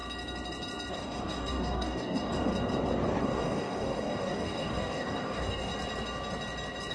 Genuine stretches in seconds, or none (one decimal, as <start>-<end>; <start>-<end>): 0.0-0.9; 2.5-3.2; 5.7-6.9